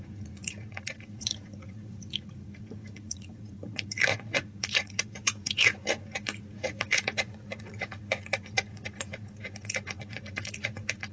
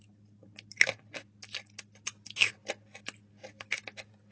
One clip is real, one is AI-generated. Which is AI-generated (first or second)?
first